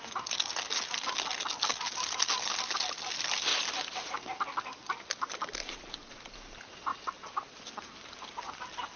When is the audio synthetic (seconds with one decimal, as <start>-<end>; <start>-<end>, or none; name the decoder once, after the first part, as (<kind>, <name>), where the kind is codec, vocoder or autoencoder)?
none